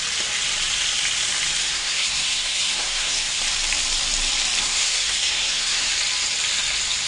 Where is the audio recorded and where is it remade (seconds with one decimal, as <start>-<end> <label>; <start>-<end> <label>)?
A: 0.0-1.6 recorded; 1.6-3.4 remade; 3.4-4.6 recorded; 4.6-5.9 remade; 5.9-7.1 recorded